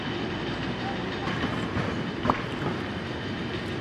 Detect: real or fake real